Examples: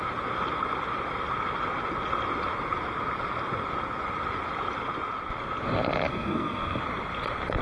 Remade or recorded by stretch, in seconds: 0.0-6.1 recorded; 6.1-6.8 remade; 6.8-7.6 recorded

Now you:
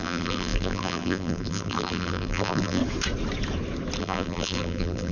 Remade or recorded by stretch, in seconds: 0.0-2.8 remade; 2.8-4.0 recorded; 4.0-5.1 remade

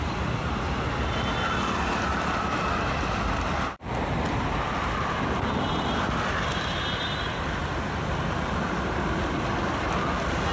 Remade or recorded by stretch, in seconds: 0.0-10.5 recorded